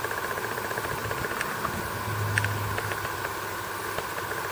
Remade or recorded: recorded